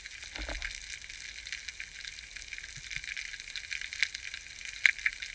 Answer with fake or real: real